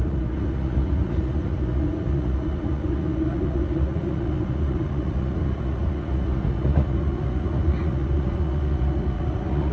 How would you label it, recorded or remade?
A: remade